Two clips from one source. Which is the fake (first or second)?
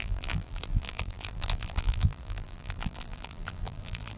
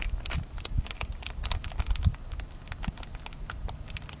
first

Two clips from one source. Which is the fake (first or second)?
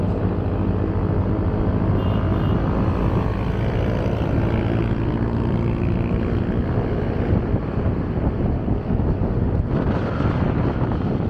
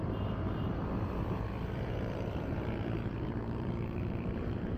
second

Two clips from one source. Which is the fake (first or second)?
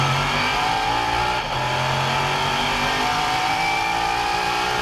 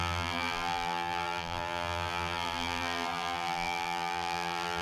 second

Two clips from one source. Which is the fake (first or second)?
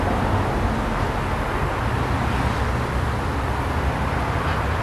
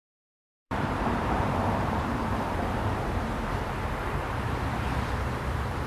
second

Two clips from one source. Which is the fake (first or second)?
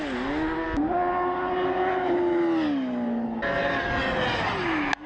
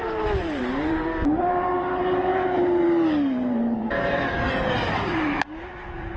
second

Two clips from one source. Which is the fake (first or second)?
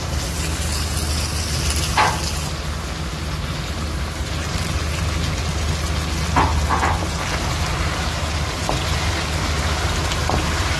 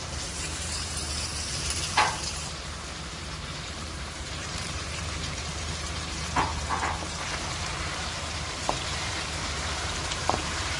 second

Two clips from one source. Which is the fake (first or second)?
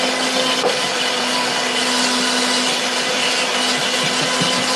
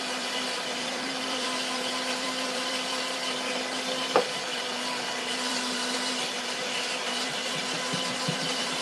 second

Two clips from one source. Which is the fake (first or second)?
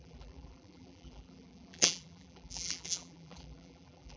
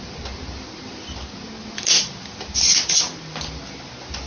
first